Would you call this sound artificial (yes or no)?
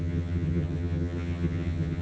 yes